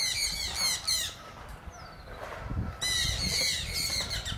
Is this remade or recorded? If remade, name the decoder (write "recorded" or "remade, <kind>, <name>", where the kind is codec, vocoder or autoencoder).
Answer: recorded